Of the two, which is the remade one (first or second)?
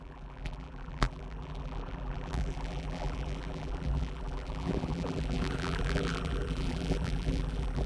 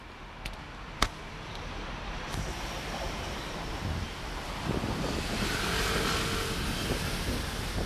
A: first